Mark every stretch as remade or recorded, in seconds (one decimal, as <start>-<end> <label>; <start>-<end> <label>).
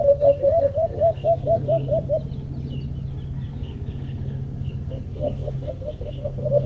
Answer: 0.0-1.9 remade; 1.9-3.5 recorded; 3.5-6.7 remade